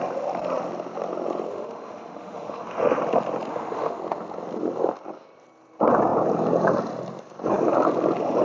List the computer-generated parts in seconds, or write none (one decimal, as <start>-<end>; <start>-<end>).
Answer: 1.5-3.0; 3.5-4.0